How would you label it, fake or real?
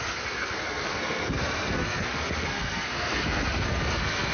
fake